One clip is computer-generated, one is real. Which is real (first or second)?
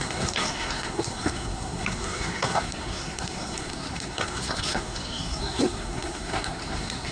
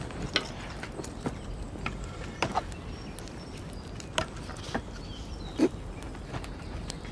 second